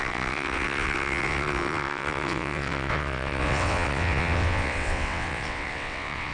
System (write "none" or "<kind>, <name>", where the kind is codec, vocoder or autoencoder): vocoder, WaveNeXt